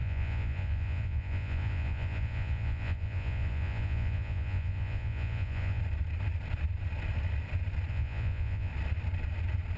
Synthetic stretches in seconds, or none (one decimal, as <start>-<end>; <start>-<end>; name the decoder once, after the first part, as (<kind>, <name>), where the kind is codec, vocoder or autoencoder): 0.0-5.8 (vocoder, Vocos); 7.9-8.7